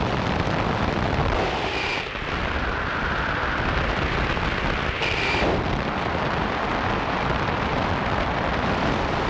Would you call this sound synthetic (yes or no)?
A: yes